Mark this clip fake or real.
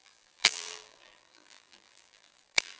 fake